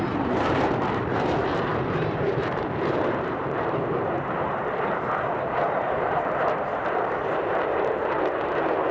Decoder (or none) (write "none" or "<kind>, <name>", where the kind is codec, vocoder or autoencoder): vocoder, BigVGAN v2